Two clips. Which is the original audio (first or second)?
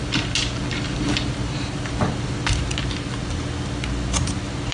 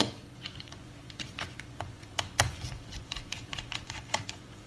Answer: first